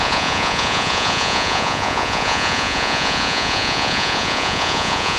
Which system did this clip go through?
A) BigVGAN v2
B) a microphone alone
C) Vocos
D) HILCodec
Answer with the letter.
C